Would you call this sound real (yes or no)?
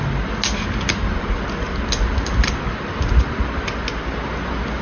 yes